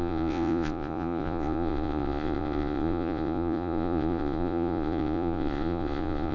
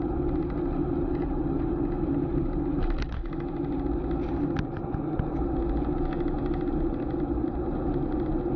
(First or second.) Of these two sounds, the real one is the second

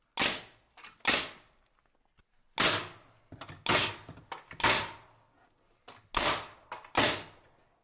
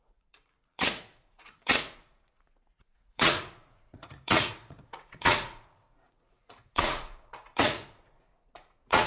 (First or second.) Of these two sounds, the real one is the first